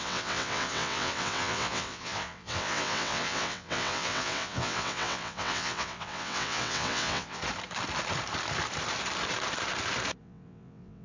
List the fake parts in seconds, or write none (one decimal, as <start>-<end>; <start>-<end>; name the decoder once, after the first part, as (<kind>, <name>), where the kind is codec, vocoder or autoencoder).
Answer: 0.0-7.4 (vocoder, WaveNeXt); 10.2-11.0

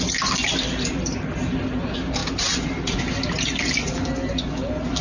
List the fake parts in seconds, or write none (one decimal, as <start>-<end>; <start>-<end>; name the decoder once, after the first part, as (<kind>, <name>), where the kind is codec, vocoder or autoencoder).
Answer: none

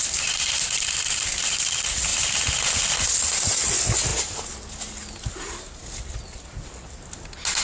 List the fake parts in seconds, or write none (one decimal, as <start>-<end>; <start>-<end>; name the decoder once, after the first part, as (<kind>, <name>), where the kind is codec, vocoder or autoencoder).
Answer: none